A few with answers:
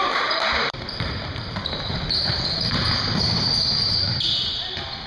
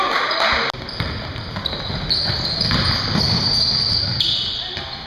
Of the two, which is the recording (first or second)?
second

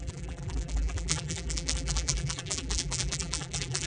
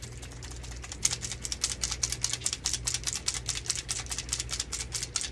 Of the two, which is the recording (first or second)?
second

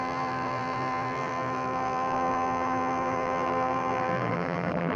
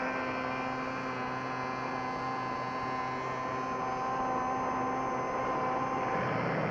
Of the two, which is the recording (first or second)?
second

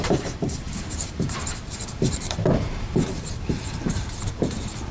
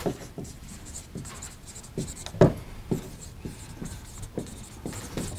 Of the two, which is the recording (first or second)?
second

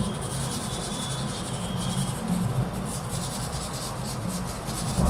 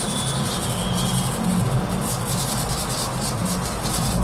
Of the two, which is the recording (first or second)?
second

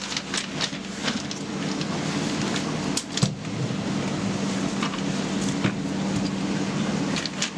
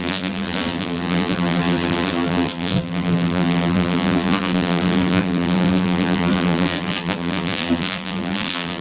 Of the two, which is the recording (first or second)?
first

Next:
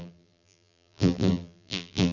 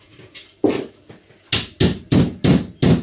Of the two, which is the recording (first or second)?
second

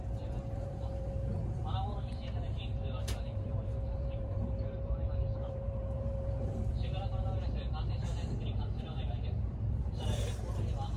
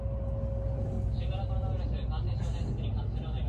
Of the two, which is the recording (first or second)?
second